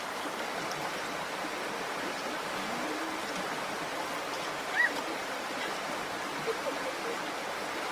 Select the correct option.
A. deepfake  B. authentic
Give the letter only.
B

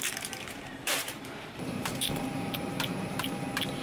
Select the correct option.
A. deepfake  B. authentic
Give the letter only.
A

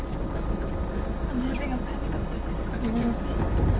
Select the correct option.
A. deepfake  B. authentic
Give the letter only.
B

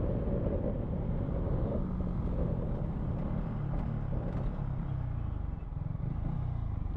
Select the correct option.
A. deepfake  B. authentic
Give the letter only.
B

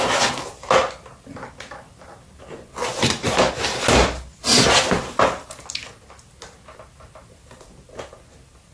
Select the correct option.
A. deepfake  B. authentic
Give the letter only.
B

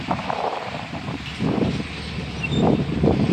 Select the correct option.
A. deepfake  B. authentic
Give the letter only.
A